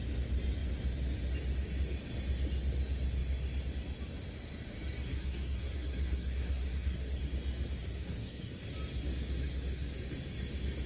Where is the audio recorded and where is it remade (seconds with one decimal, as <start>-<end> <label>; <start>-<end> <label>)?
0.0-5.1 recorded; 5.1-7.2 remade; 7.2-7.8 recorded; 7.8-8.6 remade; 8.6-10.9 recorded